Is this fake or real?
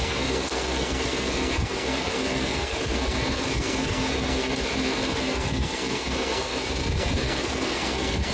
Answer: fake